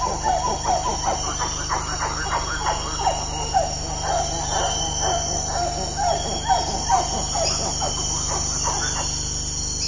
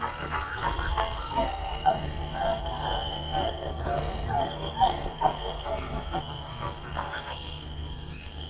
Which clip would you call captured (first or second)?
first